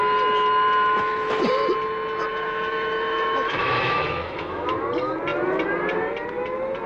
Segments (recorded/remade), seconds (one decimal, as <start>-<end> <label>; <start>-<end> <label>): 0.0-2.3 recorded; 2.3-4.7 remade; 4.7-6.9 recorded